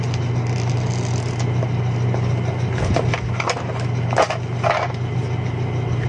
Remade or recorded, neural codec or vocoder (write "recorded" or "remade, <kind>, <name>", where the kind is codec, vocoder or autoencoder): recorded